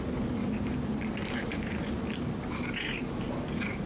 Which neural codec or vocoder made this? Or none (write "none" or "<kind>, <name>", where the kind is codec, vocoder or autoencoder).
none